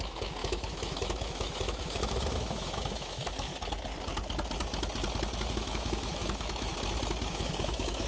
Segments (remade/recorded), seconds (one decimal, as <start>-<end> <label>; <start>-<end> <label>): 0.0-3.5 remade; 3.5-5.5 recorded; 5.5-6.7 remade; 6.7-7.3 recorded; 7.3-8.1 remade